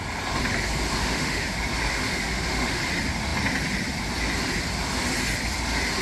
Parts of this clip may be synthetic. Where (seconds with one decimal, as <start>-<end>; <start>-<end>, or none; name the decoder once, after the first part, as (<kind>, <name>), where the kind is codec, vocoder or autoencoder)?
1.0-1.5 (autoencoder, DAC-VAE); 1.9-2.8

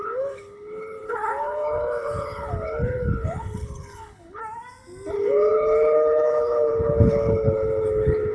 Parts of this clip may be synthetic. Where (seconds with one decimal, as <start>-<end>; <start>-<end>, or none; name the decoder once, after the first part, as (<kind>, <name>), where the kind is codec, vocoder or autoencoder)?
0.0-4.4 (codec, HILCodec); 5.1-8.3

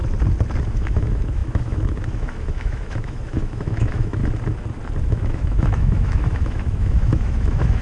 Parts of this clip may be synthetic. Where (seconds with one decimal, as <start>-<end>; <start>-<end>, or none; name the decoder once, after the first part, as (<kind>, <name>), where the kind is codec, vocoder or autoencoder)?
0.6-4.2 (autoencoder, DAC-VAE); 5.0-7.8

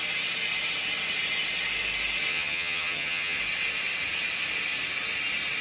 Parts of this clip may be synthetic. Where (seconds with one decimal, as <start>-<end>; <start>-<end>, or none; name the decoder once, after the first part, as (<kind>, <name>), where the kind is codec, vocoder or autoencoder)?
2.3-3.4 (vocoder, HiFi-GAN)

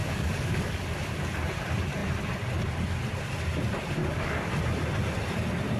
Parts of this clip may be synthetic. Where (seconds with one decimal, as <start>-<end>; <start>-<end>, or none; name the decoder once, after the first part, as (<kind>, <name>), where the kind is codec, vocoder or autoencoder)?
0.0-0.8 (codec, DAC); 4.0-4.5

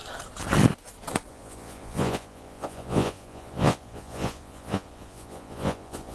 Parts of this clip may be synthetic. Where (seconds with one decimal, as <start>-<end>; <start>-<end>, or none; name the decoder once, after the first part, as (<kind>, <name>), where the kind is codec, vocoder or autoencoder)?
1.3-6.1 (vocoder, Vocos)

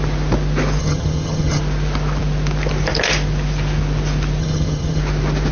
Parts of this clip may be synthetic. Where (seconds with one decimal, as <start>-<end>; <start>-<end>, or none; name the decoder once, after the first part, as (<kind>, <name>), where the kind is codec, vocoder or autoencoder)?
0.8-1.6 (vocoder, HiFi-GAN); 4.4-5.0

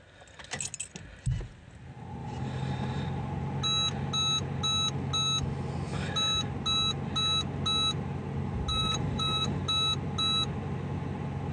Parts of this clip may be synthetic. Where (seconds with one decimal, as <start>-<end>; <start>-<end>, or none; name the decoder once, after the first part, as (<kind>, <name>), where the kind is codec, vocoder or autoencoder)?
2.2-3.0 (vocoder, BigVGAN v2); 8.7-9.6